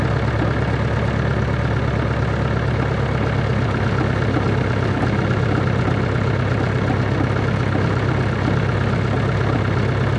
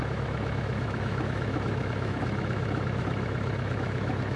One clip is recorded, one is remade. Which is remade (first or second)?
second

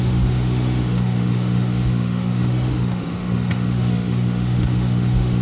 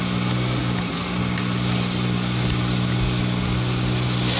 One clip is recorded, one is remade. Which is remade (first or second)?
first